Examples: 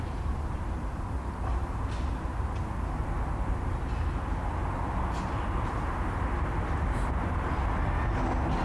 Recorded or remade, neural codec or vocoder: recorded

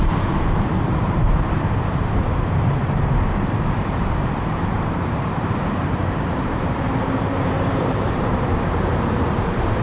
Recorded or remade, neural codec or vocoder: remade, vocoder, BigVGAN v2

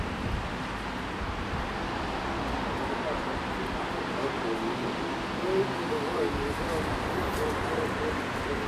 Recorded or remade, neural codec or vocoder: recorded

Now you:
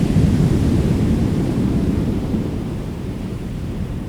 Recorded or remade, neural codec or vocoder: remade, vocoder, BigVGAN v2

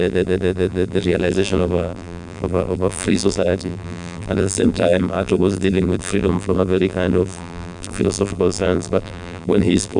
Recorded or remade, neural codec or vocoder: remade, vocoder, BigVGAN v2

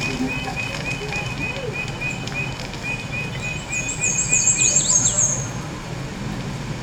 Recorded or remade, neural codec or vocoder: recorded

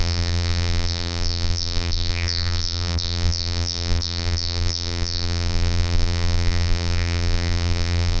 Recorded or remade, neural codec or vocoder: remade, vocoder, BigVGAN v2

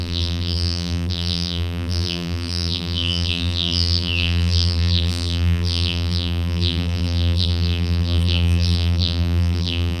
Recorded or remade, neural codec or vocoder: remade, vocoder, BigVGAN v2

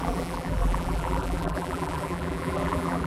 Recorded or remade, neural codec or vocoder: remade, vocoder, BigVGAN v2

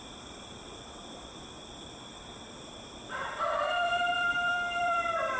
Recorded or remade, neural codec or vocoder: remade, vocoder, BigVGAN v2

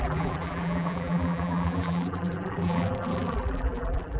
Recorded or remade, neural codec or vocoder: remade, vocoder, BigVGAN v2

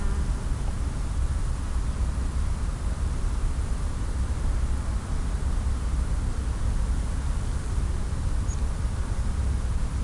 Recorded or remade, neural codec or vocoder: recorded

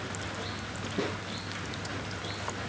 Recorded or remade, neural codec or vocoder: recorded